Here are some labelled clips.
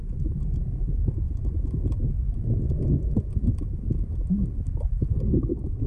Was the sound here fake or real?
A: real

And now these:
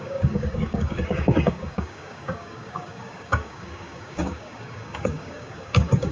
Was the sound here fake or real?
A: fake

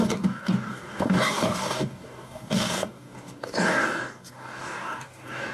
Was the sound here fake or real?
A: fake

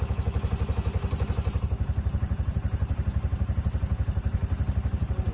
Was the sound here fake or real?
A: real